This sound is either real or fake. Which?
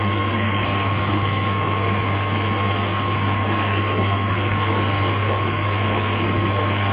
fake